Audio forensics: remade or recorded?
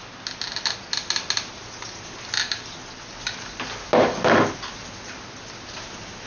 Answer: recorded